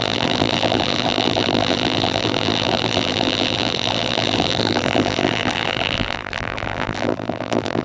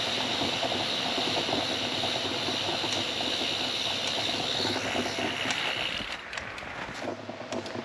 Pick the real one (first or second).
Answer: second